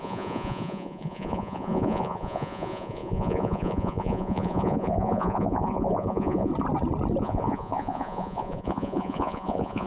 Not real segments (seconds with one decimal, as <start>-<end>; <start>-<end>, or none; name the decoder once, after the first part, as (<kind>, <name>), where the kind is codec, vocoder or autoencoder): 0.0-6.5 (vocoder, Vocos); 7.2-9.9